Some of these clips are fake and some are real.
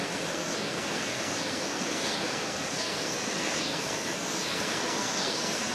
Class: fake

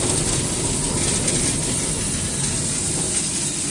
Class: real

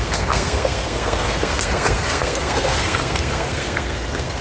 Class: fake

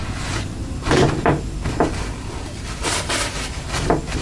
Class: real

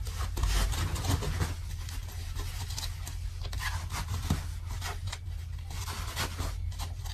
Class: real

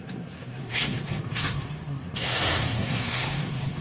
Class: fake